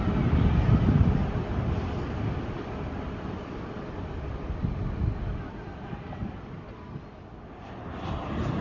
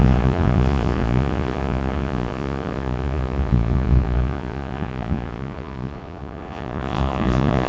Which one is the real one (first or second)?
first